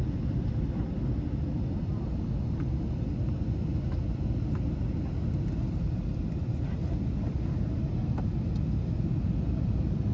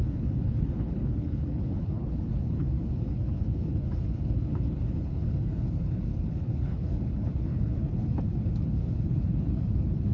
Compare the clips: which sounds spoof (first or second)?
second